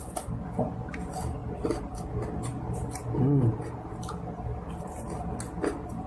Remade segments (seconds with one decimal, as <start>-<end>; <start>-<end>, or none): none